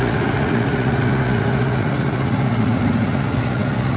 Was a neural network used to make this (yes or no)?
yes